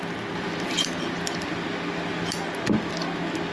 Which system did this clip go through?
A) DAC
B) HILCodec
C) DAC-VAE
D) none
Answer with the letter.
D